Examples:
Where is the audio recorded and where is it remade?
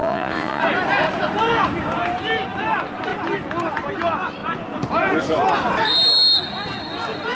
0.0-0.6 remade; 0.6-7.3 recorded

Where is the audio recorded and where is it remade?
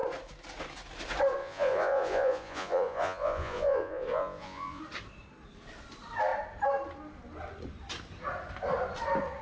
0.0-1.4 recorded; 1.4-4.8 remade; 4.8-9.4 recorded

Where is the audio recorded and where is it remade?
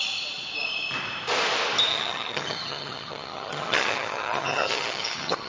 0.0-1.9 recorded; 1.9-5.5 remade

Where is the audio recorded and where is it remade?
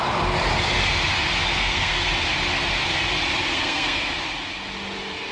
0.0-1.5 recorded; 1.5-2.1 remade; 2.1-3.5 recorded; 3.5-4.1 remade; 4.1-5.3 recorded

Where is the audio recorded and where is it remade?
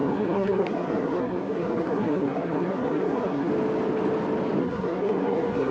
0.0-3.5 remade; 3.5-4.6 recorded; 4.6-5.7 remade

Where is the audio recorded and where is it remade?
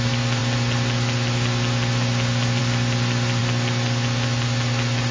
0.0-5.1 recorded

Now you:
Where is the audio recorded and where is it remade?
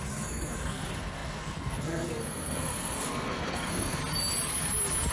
0.0-4.0 remade; 4.0-5.1 recorded